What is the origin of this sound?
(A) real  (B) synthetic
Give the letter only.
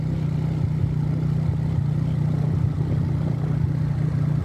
A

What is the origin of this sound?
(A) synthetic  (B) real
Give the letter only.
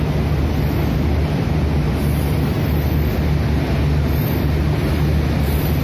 B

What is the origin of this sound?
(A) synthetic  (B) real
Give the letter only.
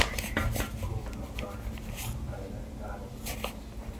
B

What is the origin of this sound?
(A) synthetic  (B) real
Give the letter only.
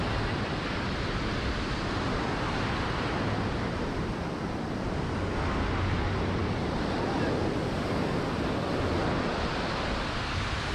B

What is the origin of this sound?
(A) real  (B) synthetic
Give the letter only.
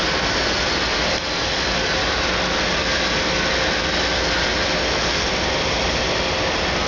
A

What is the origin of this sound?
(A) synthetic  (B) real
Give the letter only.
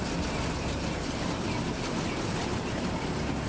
B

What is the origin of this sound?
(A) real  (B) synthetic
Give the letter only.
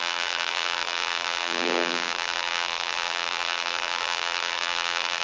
B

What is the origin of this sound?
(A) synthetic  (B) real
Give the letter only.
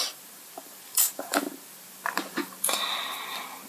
A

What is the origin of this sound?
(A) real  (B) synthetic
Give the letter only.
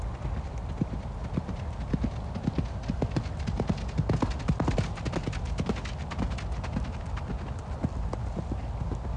A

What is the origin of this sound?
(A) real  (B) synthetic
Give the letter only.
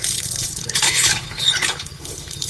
B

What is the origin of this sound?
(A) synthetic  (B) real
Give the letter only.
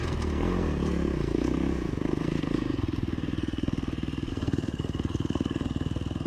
A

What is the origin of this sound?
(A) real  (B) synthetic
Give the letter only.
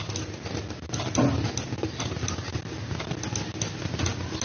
A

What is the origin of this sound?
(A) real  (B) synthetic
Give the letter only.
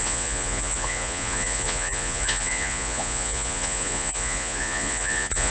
B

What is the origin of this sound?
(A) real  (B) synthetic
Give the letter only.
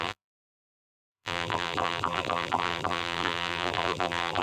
B